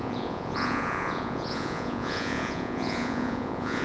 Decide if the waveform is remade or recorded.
remade